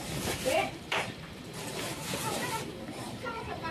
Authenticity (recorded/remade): remade